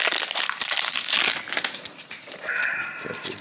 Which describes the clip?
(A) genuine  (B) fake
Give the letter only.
A